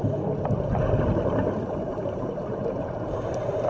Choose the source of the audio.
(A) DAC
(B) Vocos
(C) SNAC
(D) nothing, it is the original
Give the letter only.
D